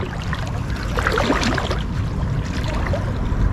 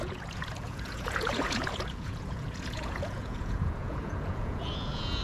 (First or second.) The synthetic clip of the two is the second